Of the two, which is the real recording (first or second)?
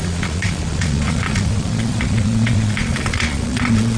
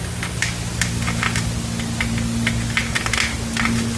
second